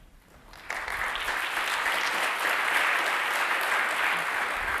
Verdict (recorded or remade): recorded